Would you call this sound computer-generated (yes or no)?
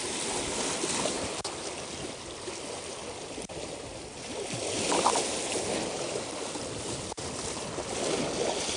no